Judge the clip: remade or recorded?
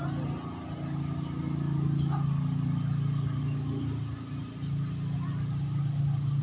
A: recorded